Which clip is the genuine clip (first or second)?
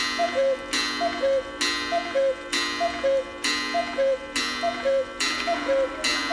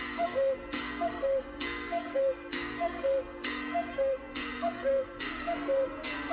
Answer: first